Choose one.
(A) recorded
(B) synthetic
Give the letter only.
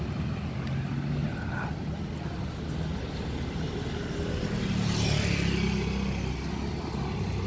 A